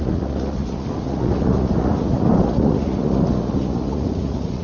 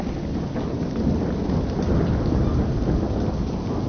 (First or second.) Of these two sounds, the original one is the second